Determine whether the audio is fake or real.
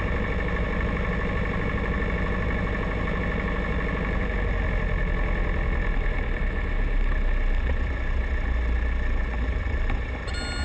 real